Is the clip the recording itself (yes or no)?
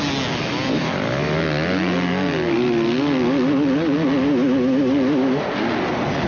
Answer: yes